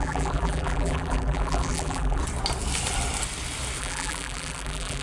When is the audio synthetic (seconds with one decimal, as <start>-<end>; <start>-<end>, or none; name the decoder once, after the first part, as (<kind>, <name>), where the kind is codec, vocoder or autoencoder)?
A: 0.0-2.2 (vocoder, BigVGAN v2); 3.8-5.0